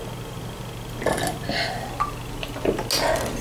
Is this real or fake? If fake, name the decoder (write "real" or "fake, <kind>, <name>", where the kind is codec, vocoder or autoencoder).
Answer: real